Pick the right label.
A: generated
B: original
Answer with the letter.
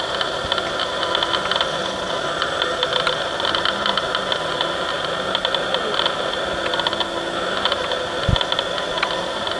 B